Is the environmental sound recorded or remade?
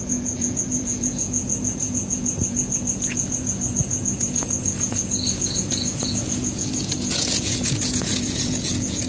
remade